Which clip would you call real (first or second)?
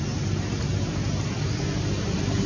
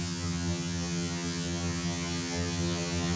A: first